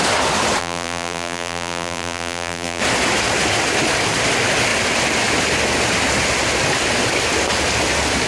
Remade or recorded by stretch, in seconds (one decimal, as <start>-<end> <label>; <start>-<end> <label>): 0.0-0.6 recorded; 0.6-2.8 remade; 2.8-8.3 recorded